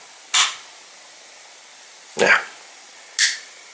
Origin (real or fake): real